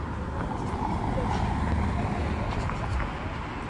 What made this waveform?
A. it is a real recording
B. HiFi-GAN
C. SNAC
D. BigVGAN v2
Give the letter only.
A